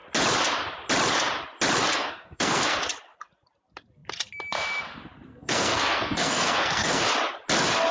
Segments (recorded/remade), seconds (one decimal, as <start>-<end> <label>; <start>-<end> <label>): 0.0-1.9 recorded; 1.9-2.8 remade; 2.8-5.3 recorded; 5.3-7.0 remade; 7.0-7.9 recorded